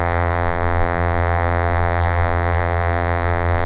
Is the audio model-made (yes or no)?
yes